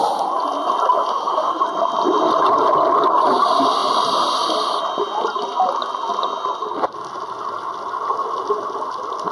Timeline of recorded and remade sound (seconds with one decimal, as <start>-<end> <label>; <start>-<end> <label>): 0.0-1.1 recorded; 1.1-1.6 remade; 1.6-9.3 recorded